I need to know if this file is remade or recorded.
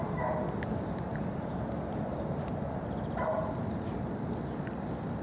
recorded